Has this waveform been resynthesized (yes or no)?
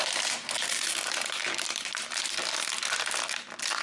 no